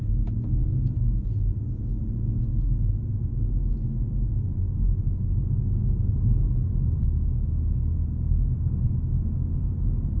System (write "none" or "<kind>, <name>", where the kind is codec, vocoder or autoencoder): none